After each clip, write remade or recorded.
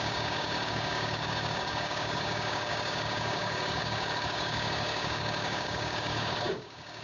remade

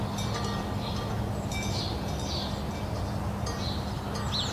recorded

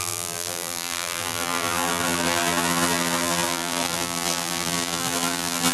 remade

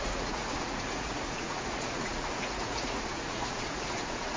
remade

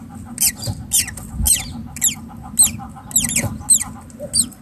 recorded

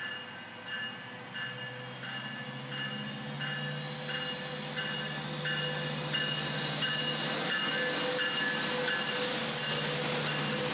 recorded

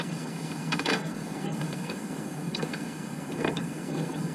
remade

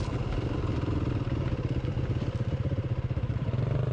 remade